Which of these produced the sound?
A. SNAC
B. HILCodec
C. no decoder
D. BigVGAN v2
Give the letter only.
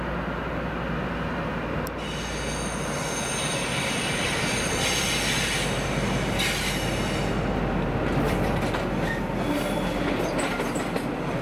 C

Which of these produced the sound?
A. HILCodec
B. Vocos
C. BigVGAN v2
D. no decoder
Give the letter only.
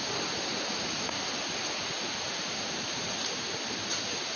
D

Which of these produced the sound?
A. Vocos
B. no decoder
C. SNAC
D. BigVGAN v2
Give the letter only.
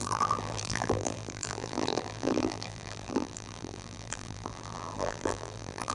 D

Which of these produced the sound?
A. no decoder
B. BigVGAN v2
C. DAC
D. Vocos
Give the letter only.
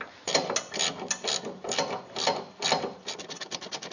A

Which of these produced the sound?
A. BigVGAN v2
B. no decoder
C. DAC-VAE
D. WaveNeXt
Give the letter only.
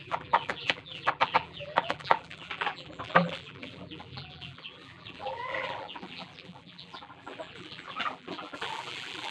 A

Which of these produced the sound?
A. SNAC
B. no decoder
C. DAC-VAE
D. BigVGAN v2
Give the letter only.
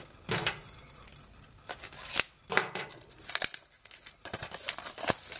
B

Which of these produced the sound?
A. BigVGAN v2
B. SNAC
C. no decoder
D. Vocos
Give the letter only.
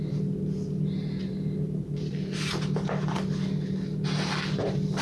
C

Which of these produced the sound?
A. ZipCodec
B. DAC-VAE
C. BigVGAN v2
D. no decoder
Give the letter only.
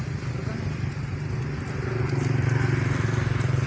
D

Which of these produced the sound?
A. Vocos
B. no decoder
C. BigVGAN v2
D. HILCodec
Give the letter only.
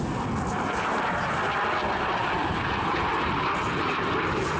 B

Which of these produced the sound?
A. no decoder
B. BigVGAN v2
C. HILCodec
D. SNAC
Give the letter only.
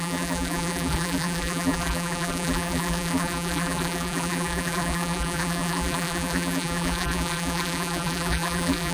B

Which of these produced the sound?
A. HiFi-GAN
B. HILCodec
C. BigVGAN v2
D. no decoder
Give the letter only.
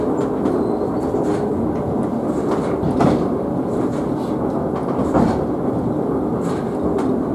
D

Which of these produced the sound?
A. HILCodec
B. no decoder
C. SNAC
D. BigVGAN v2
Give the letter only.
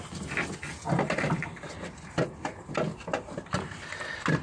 B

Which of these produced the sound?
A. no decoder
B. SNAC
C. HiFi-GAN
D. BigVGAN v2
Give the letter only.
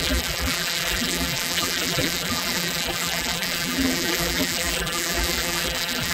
D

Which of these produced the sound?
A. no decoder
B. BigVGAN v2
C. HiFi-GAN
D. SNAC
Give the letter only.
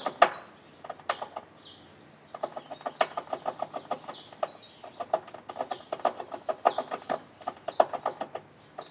A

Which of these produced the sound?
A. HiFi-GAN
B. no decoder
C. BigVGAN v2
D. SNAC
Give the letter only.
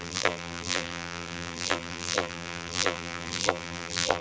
C